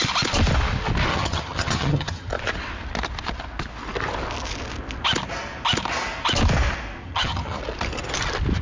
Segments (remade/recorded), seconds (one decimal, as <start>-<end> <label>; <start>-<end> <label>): 0.0-1.1 recorded; 1.1-2.3 remade; 2.3-7.0 recorded; 7.0-7.6 remade; 7.6-8.6 recorded